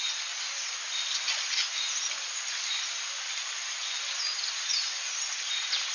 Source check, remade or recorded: recorded